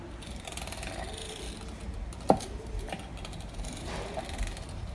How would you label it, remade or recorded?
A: recorded